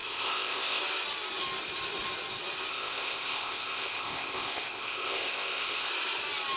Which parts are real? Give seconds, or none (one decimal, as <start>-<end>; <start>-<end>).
0.8-2.7; 5.9-6.6